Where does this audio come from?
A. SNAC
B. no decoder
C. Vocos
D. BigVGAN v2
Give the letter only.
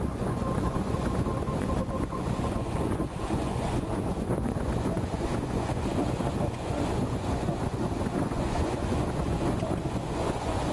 C